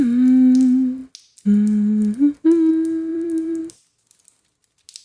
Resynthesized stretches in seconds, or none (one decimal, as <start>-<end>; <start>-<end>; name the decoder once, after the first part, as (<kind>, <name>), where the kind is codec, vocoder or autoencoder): 3.1-3.6 (vocoder, BigVGAN v2)